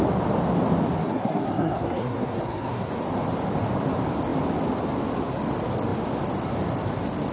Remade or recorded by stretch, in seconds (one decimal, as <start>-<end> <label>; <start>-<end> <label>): 0.0-1.0 recorded; 1.0-2.9 remade; 2.9-7.3 recorded